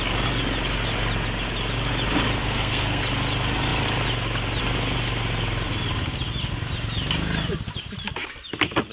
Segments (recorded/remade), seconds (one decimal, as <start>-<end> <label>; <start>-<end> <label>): 0.0-2.4 recorded; 2.4-3.0 remade; 3.0-8.9 recorded

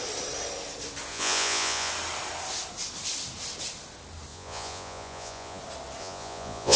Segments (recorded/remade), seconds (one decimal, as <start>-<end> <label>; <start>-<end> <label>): 0.0-1.1 recorded; 1.1-1.9 remade; 1.9-4.3 recorded; 4.3-5.6 remade; 5.6-6.0 recorded; 6.0-6.8 remade

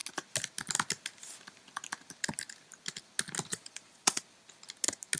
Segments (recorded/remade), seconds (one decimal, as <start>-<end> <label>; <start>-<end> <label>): 0.0-3.5 recorded; 3.5-4.2 remade; 4.2-5.2 recorded